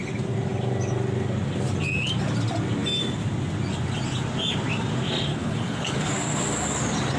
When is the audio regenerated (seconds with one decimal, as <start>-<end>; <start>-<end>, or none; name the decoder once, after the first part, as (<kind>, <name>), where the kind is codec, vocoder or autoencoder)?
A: 5.3-6.1 (codec, HILCodec)